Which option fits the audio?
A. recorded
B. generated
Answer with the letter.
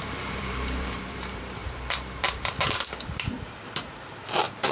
B